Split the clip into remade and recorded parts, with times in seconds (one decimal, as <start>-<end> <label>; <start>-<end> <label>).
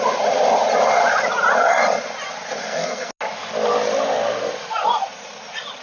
0.0-2.6 recorded; 2.6-3.1 remade; 3.1-5.8 recorded